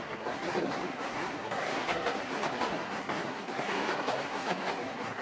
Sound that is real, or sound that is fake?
fake